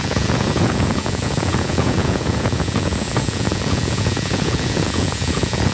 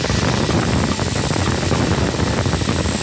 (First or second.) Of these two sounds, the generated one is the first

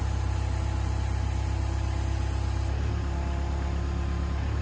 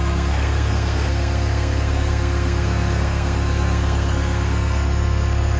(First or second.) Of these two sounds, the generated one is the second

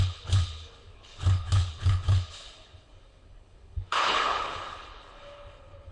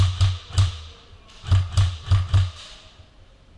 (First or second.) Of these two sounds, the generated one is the first